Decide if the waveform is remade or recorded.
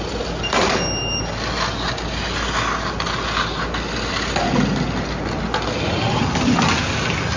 recorded